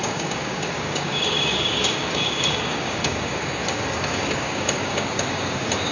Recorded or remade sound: remade